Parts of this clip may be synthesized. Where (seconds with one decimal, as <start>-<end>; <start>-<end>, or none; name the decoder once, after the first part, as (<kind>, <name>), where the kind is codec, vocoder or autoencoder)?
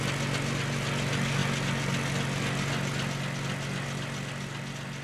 none